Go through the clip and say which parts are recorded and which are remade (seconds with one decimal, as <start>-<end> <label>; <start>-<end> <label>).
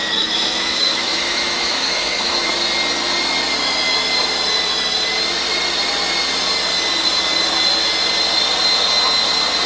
0.0-2.5 remade; 2.5-9.7 recorded